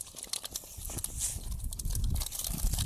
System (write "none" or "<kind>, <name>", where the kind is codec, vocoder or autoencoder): none